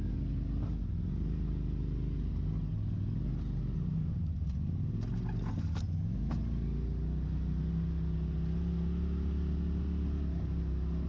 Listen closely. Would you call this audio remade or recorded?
recorded